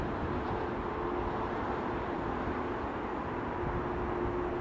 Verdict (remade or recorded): recorded